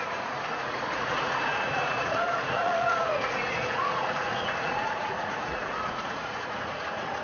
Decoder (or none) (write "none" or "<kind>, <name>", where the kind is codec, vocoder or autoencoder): vocoder, Vocos